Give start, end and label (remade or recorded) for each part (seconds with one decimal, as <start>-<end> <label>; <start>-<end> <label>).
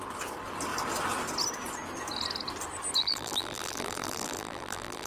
0.0-3.0 recorded; 3.0-5.1 remade